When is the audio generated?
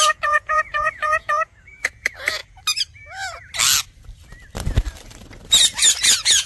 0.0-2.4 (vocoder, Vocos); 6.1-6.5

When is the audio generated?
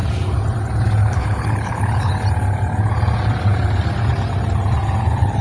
1.0-2.1 (codec, HILCodec)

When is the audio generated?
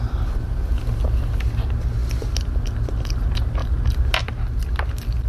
none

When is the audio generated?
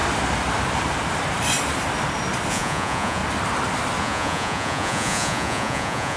2.5-3.2 (vocoder, Vocos); 4.0-6.2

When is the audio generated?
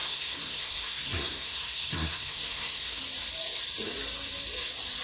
0.0-3.0 (codec, SNAC)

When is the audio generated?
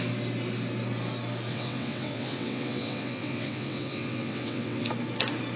1.5-4.9 (vocoder, WaveNeXt)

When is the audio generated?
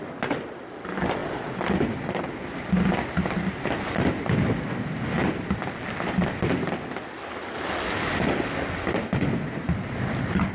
none